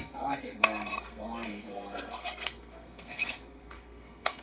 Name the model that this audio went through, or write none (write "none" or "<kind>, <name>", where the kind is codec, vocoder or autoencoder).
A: codec, SNAC